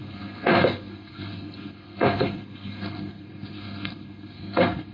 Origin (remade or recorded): remade